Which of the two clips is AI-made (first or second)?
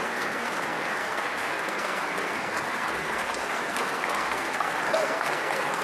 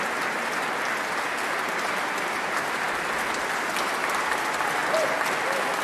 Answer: first